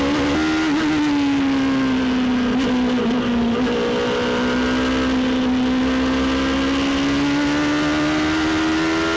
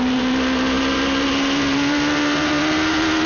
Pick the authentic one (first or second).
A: first